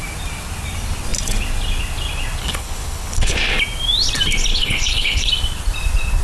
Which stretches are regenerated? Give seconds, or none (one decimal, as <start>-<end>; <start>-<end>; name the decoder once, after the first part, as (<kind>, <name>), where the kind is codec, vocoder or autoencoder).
2.4-3.4 (codec, HILCodec); 4.5-5.3